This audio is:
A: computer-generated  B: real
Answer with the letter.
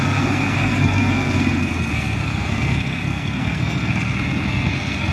A